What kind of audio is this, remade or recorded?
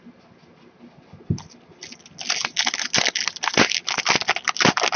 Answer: recorded